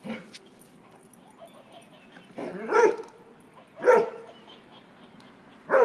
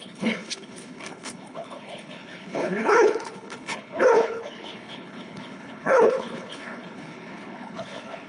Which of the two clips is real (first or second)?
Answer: first